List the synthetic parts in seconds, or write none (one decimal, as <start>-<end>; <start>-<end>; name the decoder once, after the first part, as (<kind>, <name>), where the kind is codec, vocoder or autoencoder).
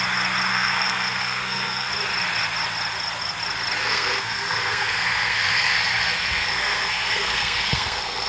0.5-1.9 (codec, SNAC); 3.8-8.3